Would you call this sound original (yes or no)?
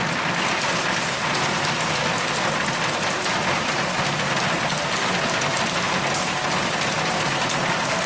yes